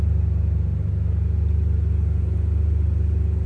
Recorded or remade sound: recorded